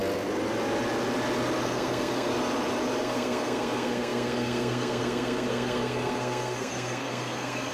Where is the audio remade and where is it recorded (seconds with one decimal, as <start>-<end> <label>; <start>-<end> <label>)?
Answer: 0.0-1.6 recorded; 1.6-2.3 remade; 2.3-3.0 recorded; 3.0-7.7 remade